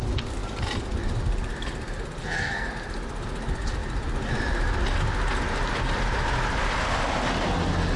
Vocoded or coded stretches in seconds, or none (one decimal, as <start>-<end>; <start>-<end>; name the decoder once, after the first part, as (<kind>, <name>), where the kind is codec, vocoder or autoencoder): 2.2-2.7 (codec, SNAC)